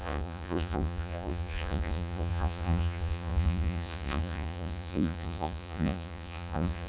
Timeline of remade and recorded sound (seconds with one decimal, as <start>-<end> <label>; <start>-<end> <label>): 0.0-6.9 remade